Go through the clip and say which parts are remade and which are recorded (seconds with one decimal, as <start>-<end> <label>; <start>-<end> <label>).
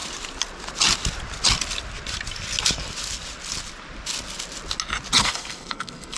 0.0-5.2 recorded; 5.2-6.2 remade